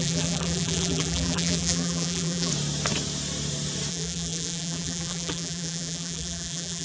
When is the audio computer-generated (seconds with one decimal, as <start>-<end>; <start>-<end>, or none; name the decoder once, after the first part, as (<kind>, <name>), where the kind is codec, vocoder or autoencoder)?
0.0-2.5 (vocoder, BigVGAN v2); 3.9-6.8